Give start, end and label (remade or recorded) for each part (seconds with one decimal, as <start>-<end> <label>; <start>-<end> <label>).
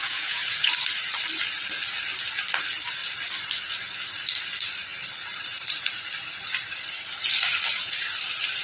0.0-0.7 remade; 0.7-8.6 recorded